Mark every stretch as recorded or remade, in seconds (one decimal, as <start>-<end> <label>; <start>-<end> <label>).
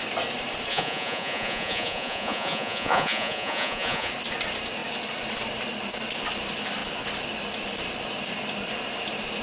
0.0-0.7 recorded; 0.7-4.1 remade; 4.1-9.4 recorded